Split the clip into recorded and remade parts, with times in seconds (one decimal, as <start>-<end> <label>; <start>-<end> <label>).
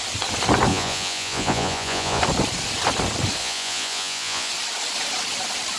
0.0-0.7 recorded; 0.7-2.2 remade; 2.2-3.4 recorded; 3.4-4.5 remade; 4.5-5.8 recorded